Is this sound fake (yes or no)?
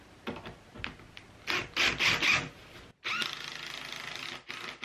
no